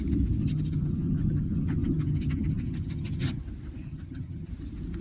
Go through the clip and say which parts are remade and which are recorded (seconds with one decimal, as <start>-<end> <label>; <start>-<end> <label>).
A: 0.0-0.4 recorded; 0.4-3.4 remade; 3.4-3.8 recorded; 3.8-4.5 remade; 4.5-5.0 recorded